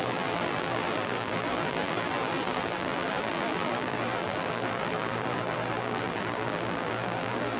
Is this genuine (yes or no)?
no